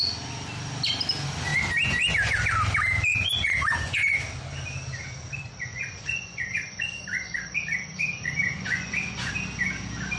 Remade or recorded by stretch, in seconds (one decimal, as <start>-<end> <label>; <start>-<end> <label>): 0.0-3.1 recorded; 3.1-4.2 remade; 4.2-5.7 recorded; 5.7-9.3 remade; 9.3-10.2 recorded